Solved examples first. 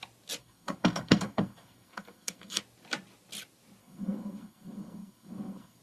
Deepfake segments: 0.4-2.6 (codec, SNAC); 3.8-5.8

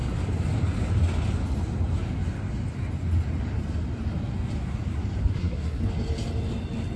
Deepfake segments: 5.2-5.8 (codec, SNAC)